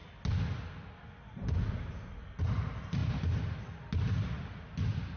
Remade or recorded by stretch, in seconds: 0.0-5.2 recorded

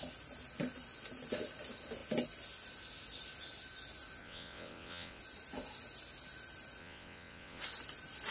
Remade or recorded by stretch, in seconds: 0.0-4.2 recorded; 4.2-5.2 remade; 5.2-6.8 recorded; 6.8-7.6 remade; 7.6-8.3 recorded

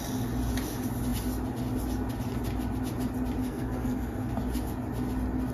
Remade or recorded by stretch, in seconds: 0.0-3.4 recorded; 3.4-4.3 remade; 4.3-5.5 recorded

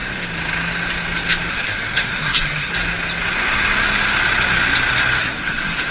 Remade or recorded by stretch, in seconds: 0.0-1.5 recorded; 1.5-2.7 remade; 2.7-5.2 recorded; 5.2-5.9 remade

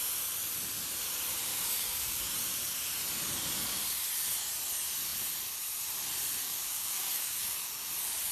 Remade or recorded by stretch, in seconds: 0.0-1.5 recorded; 1.5-2.3 remade; 2.3-6.4 recorded; 6.4-7.7 remade; 7.7-8.3 recorded

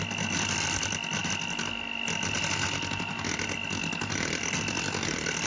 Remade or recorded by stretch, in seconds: 0.0-5.5 recorded

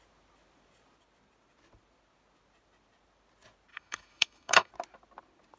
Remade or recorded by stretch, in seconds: 0.0-3.7 recorded; 3.7-4.7 remade; 4.7-5.6 recorded

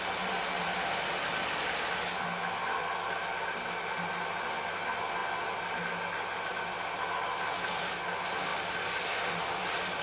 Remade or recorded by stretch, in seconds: 0.0-10.0 recorded